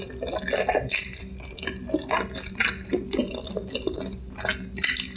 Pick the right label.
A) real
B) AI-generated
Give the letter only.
A